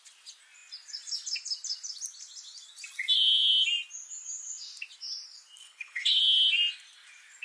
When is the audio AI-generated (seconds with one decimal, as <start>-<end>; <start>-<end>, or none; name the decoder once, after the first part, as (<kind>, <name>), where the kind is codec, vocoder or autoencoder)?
5.6-6.2 (codec, HILCodec)